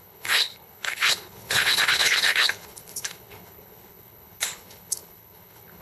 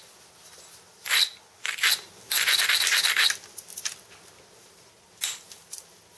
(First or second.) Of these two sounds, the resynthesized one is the first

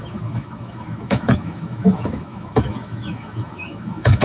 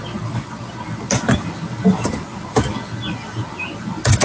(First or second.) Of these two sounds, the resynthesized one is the first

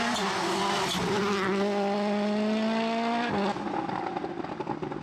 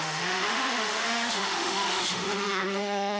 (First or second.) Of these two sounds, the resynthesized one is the second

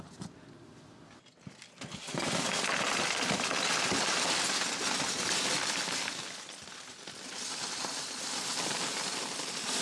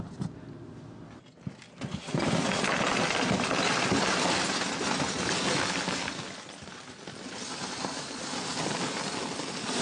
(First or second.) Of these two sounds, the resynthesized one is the first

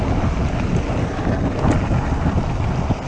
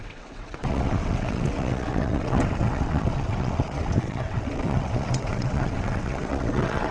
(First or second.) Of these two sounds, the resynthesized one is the second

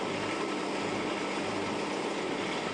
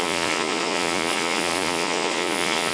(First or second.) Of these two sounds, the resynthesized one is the second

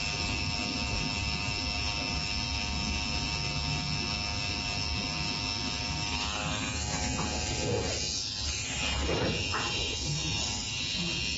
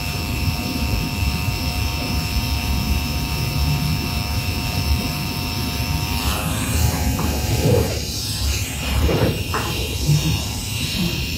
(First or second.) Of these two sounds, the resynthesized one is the second